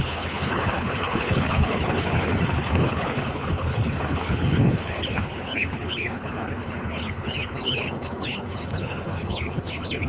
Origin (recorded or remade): remade